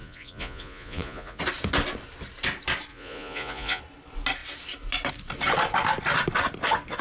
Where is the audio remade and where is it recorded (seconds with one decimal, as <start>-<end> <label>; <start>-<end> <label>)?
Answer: 0.0-1.4 remade; 1.4-2.9 recorded; 2.9-3.8 remade; 3.8-7.0 recorded

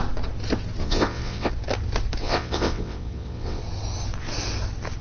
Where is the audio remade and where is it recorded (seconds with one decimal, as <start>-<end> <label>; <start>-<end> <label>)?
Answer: 0.0-0.8 recorded; 0.8-1.5 remade; 1.5-2.2 recorded; 2.2-3.6 remade; 3.6-5.0 recorded

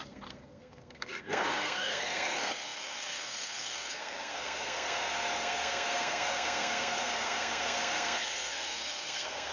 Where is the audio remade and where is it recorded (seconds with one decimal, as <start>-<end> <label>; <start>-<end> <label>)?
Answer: 0.0-9.5 remade

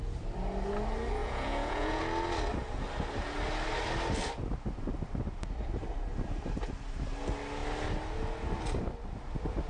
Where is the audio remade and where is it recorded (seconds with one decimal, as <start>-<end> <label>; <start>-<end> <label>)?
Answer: 0.0-1.2 recorded; 1.2-2.0 remade; 2.0-9.7 recorded

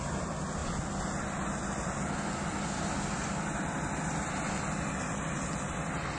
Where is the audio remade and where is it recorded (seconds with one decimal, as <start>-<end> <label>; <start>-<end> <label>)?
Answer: 0.0-6.2 recorded